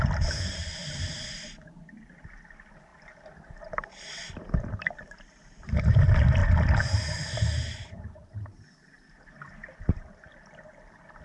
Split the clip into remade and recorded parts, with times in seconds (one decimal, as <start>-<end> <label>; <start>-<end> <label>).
0.0-11.2 recorded